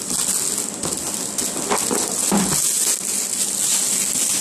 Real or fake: real